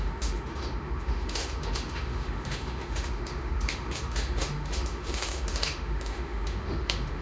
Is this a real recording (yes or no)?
no